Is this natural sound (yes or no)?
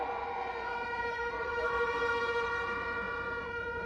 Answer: no